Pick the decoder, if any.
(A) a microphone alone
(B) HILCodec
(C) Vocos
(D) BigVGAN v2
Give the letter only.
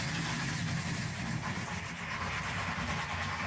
A